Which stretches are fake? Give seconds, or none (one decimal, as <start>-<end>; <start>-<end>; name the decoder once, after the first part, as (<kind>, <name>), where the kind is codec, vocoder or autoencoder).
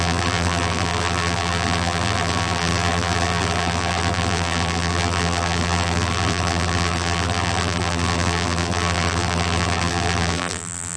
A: 0.0-11.0 (vocoder, BigVGAN v2)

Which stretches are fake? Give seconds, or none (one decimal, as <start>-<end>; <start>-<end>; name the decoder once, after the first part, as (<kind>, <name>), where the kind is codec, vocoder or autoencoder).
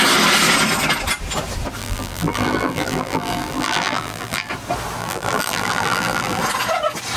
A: 1.8-4.5 (vocoder, BigVGAN v2); 5.0-6.4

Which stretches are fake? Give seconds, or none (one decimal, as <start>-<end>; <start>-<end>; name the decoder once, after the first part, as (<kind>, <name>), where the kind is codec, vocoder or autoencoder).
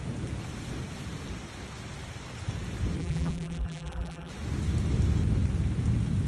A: 3.0-4.3 (vocoder, BigVGAN v2)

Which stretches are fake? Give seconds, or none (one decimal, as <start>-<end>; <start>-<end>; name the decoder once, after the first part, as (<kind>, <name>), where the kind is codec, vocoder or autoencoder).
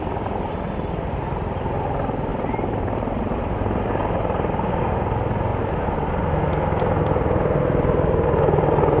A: 2.3-4.8 (vocoder, BigVGAN v2); 5.5-6.1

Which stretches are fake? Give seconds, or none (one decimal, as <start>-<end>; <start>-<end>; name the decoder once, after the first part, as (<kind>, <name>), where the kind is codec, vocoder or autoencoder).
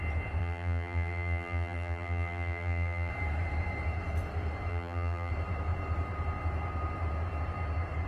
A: 0.4-3.1 (vocoder, BigVGAN v2); 4.7-5.3